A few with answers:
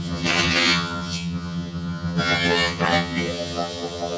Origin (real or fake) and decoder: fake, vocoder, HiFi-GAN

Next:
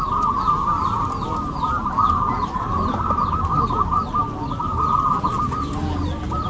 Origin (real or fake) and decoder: real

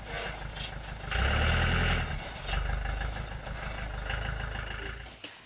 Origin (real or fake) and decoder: real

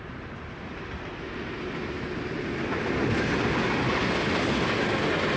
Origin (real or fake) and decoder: real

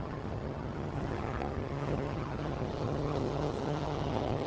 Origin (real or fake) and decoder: fake, vocoder, HiFi-GAN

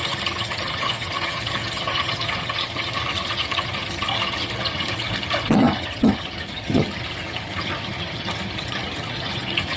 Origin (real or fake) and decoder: fake, vocoder, HiFi-GAN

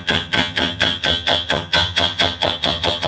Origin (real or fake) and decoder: fake, vocoder, HiFi-GAN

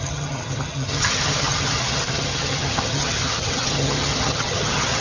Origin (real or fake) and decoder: fake, vocoder, HiFi-GAN